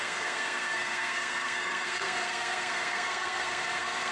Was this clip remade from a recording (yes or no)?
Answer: yes